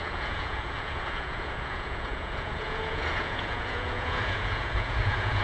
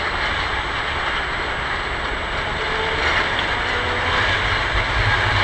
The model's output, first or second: first